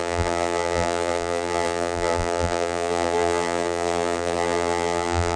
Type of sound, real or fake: fake